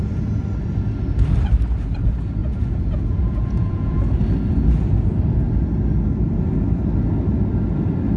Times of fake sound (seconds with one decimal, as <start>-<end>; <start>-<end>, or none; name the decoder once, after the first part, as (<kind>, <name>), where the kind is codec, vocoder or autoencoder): 2.4-4.1 (vocoder, Vocos)